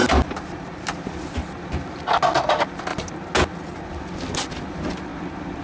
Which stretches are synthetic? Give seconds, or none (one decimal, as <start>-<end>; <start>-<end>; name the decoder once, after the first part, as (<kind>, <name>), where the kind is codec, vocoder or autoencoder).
none